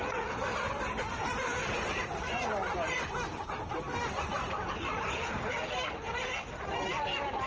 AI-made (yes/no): yes